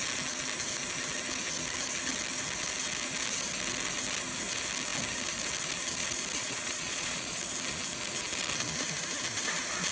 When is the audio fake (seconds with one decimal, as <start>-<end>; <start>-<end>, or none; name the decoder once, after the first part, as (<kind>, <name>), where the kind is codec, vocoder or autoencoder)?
6.4-7.4 (vocoder, Vocos)